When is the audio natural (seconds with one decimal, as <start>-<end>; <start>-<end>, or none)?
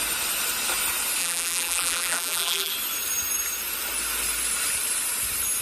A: 0.0-1.2; 2.7-5.6